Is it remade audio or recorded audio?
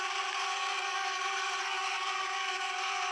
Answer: remade